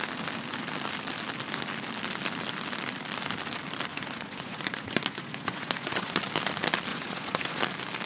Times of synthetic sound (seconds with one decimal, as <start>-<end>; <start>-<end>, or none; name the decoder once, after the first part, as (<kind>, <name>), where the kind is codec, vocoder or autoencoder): 3.9-6.2 (vocoder, Vocos); 6.9-7.6

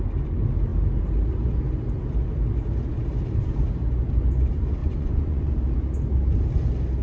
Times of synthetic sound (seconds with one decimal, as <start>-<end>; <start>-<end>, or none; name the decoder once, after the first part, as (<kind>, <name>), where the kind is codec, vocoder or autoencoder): 4.8-5.5 (vocoder, Vocos)

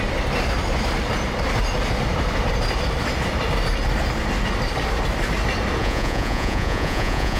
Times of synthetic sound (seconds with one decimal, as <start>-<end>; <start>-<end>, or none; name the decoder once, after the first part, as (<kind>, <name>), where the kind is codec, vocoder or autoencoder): 5.8-7.4 (vocoder, Vocos)

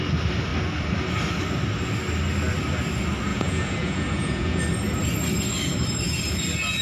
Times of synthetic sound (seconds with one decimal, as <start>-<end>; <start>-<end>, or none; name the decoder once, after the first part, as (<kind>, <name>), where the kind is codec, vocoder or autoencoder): 3.3-4.6 (vocoder, Vocos)

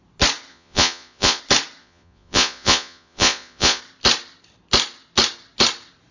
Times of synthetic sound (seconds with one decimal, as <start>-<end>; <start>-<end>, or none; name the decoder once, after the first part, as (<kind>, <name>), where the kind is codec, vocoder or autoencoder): 0.5-1.4 (vocoder, Vocos); 1.8-3.8

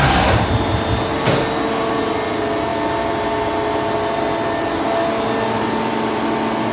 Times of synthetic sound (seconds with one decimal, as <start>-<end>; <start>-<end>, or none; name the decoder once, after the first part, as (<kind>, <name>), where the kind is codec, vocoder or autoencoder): none

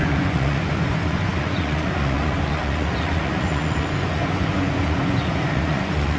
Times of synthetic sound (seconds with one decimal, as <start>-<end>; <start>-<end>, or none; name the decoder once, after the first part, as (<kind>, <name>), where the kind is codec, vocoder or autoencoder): 0.0-6.2 (vocoder, Vocos)

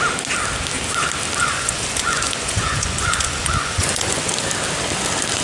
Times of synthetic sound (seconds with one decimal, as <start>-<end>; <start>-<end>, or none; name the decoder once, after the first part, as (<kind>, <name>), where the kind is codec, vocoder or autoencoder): 1.4-4.3 (vocoder, Vocos)